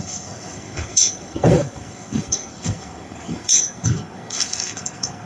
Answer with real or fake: fake